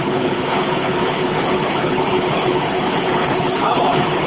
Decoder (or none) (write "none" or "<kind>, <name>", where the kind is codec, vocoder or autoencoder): codec, HILCodec